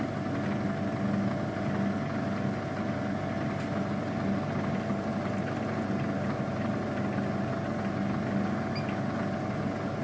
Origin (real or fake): real